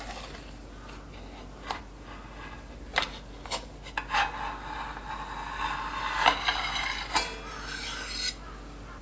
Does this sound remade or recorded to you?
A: recorded